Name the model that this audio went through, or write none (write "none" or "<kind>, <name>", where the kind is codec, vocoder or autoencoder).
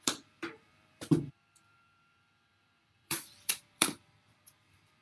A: vocoder, BigVGAN v2